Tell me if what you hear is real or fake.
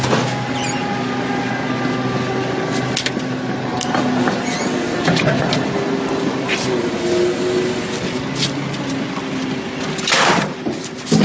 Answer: real